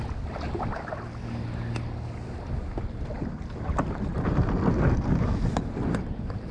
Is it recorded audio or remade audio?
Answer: recorded